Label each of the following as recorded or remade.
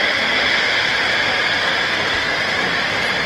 recorded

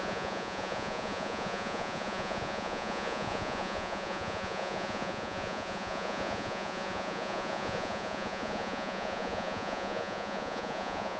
remade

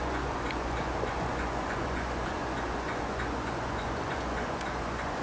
remade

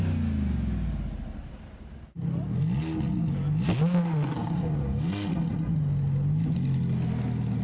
recorded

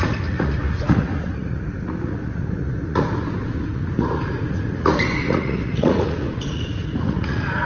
remade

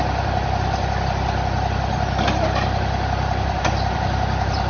recorded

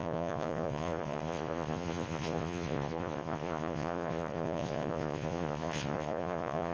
remade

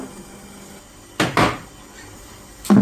recorded